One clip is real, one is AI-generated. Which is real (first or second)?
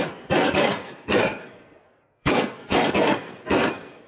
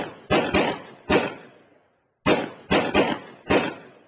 second